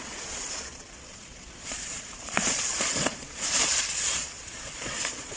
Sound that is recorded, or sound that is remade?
remade